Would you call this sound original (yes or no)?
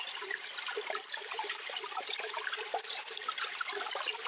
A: yes